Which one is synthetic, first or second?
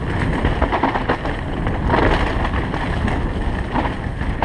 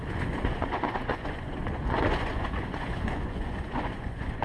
second